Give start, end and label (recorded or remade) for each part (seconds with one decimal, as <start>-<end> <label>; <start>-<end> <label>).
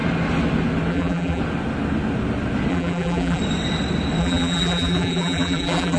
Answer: 0.0-0.9 recorded; 0.9-1.4 remade; 1.4-2.7 recorded; 2.7-3.4 remade; 3.4-4.2 recorded; 4.2-6.0 remade